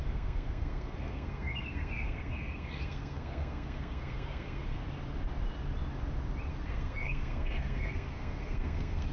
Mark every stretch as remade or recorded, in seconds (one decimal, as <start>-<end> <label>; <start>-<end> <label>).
0.0-4.8 remade; 4.8-6.5 recorded; 6.5-9.1 remade